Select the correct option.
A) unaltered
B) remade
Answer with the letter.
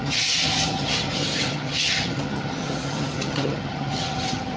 B